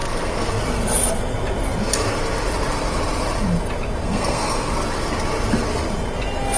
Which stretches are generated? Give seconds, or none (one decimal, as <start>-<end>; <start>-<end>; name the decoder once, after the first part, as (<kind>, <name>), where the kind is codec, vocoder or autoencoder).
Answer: 0.0-0.5 (codec, SNAC); 4.0-4.7